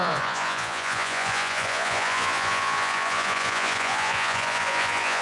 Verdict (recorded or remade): remade